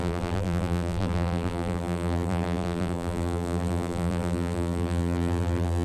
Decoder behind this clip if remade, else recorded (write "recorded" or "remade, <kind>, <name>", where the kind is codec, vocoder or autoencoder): remade, vocoder, BigVGAN v2